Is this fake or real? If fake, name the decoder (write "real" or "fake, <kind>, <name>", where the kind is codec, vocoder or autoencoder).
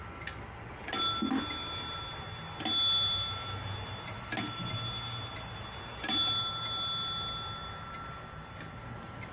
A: real